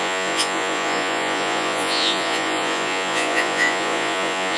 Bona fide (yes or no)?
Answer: no